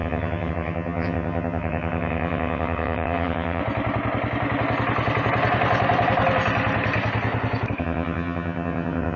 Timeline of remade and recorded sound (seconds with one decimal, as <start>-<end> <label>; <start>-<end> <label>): 0.0-3.6 remade; 3.6-7.8 recorded; 7.8-9.2 remade